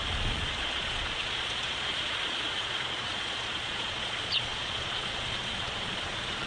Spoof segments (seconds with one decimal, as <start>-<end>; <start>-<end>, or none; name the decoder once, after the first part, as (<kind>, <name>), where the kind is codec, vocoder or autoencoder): 0.0-6.5 (vocoder, Vocos)